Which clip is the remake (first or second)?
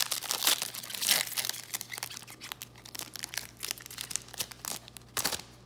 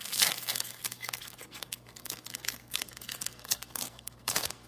second